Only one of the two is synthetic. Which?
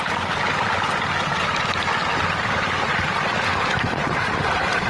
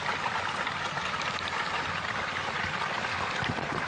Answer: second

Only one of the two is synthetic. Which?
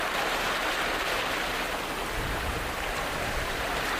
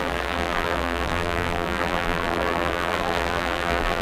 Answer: second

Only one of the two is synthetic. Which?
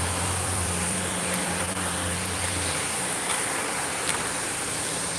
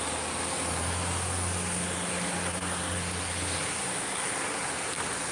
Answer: first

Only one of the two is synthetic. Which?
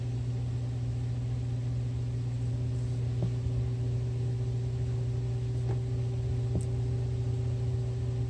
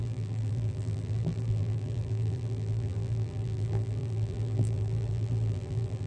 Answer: second